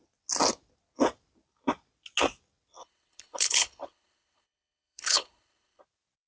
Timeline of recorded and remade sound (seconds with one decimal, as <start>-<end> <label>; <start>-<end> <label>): 0.0-2.8 recorded; 2.8-5.8 remade; 5.8-6.3 recorded